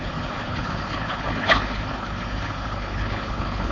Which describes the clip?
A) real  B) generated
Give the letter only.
B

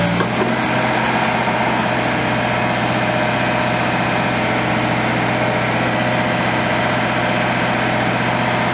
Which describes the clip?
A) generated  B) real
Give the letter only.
B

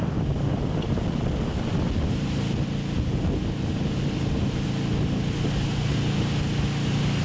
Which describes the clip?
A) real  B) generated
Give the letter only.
A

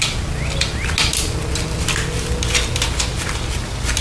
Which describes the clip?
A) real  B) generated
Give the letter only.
A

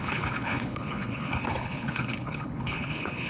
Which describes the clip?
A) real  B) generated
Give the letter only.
B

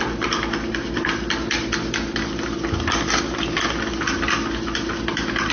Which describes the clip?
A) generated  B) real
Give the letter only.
B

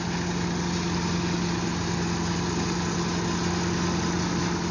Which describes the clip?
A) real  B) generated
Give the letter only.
A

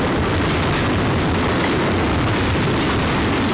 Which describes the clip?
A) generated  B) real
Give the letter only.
B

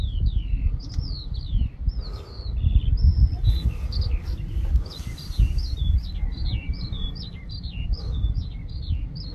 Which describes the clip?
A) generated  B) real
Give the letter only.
B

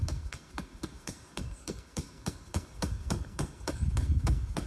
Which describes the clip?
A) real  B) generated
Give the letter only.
B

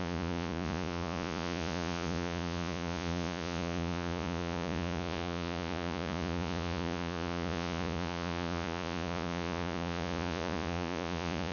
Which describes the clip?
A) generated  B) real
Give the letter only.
A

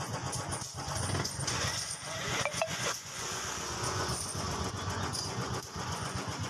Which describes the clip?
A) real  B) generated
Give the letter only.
B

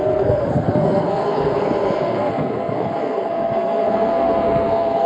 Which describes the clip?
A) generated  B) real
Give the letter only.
A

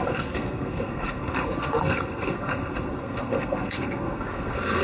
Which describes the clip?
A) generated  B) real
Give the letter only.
A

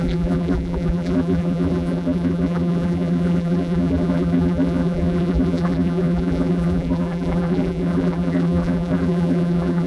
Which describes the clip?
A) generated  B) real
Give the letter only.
A